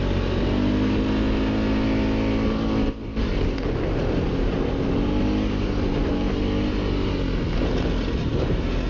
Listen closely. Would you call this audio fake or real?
real